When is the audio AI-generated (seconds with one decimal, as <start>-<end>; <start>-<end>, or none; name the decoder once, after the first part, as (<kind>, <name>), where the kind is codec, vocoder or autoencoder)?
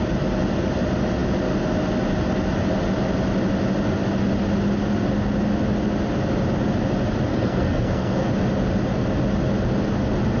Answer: 7.3-8.3 (codec, SNAC)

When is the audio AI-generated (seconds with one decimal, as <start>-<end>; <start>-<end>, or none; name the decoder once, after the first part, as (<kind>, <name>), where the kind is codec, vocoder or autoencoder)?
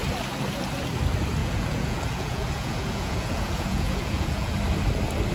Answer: 1.4-4.6 (vocoder, Vocos)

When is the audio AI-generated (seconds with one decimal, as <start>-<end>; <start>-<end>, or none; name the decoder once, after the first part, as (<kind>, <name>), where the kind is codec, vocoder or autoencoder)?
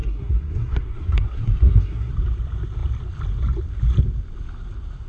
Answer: 0.0-2.1 (codec, SNAC)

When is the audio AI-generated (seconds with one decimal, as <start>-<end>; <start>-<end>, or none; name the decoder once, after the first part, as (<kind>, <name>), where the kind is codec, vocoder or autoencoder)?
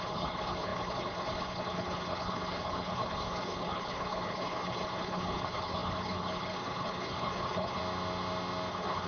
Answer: 0.0-7.8 (codec, HILCodec); 8.7-9.1